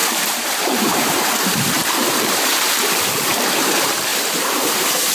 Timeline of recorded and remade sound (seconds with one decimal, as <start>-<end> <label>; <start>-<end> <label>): 0.0-1.1 remade; 1.1-2.0 recorded; 2.0-2.5 remade; 2.5-4.1 recorded; 4.1-5.1 remade